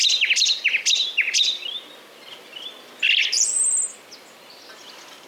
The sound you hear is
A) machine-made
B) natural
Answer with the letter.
B